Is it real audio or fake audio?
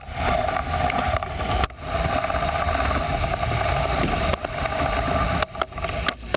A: real